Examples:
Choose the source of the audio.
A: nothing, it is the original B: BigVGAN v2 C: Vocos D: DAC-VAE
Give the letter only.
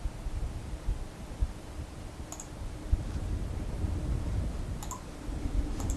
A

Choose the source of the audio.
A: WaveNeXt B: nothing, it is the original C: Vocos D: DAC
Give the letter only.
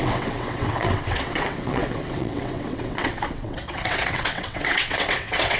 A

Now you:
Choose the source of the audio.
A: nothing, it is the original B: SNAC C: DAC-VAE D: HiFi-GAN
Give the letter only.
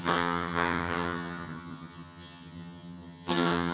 D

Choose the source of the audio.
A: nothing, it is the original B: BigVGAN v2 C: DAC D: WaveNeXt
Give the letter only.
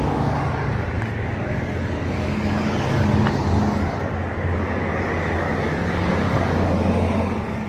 C